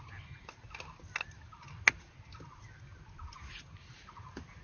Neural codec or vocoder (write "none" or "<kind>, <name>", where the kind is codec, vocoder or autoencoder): none